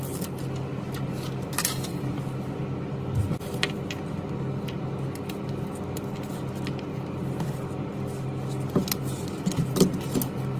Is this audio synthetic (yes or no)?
no